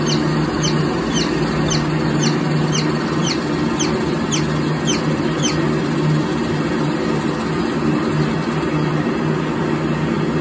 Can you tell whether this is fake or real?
real